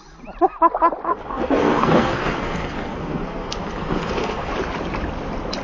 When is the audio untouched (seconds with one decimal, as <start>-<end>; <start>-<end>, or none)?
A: 0.0-1.1; 4.5-5.6